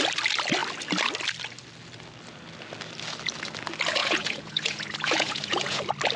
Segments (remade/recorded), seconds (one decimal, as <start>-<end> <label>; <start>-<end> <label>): 0.0-4.0 recorded; 4.0-5.8 remade; 5.8-6.2 recorded